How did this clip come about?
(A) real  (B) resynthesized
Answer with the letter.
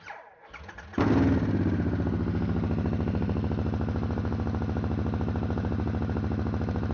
A